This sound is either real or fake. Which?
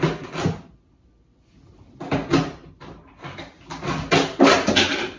real